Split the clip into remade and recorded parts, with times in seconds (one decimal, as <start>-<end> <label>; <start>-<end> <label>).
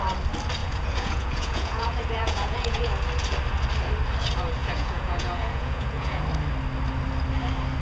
0.0-0.6 recorded; 0.6-2.9 remade; 2.9-4.6 recorded; 4.6-6.2 remade; 6.2-7.8 recorded